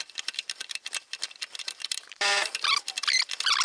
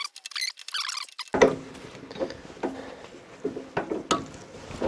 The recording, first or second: second